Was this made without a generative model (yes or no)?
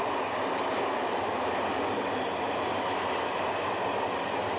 yes